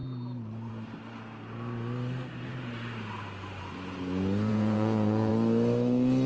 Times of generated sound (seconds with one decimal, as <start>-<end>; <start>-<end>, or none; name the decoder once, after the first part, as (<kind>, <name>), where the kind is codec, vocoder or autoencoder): 4.5-5.3 (vocoder, Vocos)